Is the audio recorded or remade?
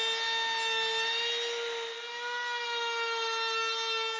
recorded